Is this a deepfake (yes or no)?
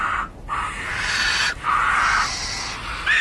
no